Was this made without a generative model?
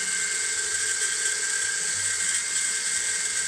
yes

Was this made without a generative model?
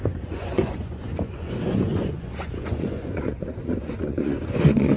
no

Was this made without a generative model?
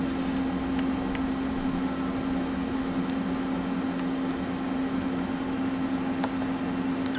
yes